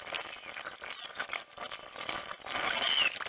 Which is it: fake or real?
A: real